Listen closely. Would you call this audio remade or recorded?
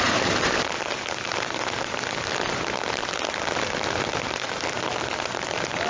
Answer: remade